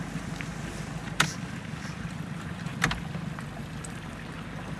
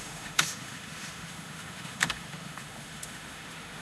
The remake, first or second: second